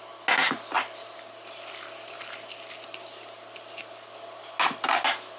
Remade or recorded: recorded